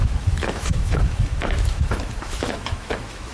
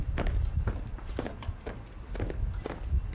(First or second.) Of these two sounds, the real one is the second